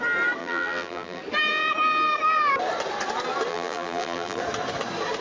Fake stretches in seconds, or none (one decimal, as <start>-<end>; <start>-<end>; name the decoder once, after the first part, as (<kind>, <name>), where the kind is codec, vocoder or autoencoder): 0.4-1.2 (vocoder, BigVGAN v2); 3.5-4.4